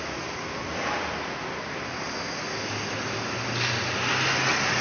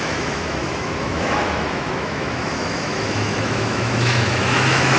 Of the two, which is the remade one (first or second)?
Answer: second